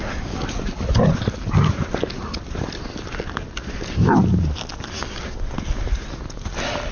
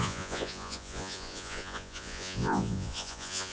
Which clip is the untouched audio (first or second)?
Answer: first